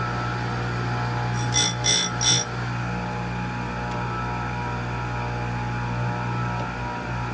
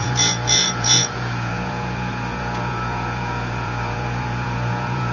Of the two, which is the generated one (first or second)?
second